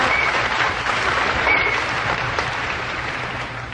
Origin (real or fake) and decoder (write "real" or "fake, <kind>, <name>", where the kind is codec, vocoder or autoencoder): fake, vocoder, BigVGAN v2